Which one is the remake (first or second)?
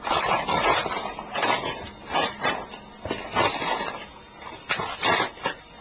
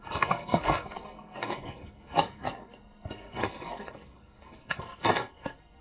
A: second